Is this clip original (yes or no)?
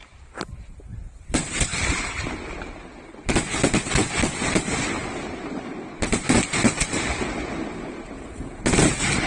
yes